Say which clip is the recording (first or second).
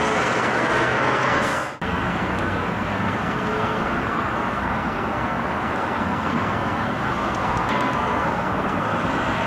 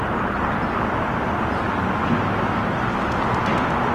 second